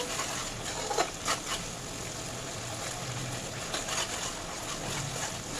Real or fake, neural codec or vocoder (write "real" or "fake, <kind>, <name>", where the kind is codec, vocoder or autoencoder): real